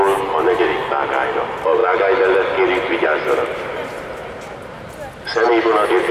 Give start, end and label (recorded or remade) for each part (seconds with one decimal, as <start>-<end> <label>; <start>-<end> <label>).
0.0-6.1 recorded